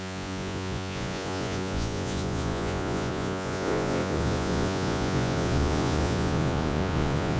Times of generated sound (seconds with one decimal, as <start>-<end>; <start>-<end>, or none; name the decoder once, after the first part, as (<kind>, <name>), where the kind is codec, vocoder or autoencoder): 0.0-7.4 (vocoder, Vocos)